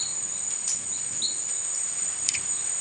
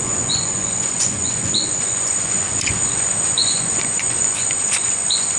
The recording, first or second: first